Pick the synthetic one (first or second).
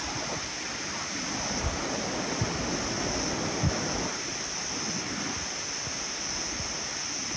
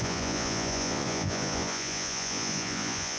second